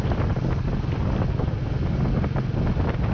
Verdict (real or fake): real